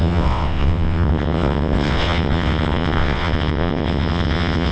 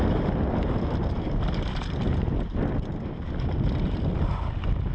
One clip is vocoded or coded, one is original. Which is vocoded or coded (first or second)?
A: first